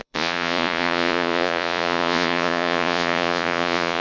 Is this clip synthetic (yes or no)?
yes